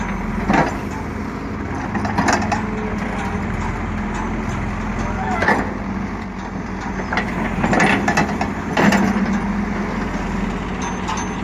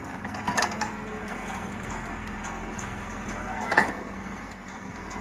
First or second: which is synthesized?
second